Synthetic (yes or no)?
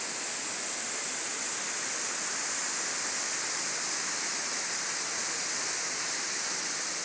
no